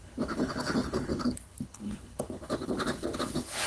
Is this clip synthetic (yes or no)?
yes